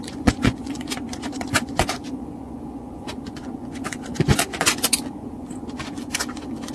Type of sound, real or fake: fake